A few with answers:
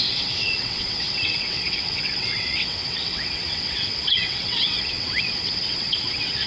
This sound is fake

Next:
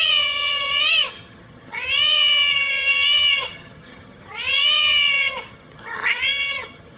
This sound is fake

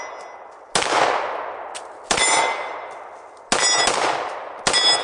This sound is real